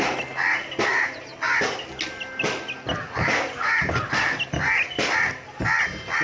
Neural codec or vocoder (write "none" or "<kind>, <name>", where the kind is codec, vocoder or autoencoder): none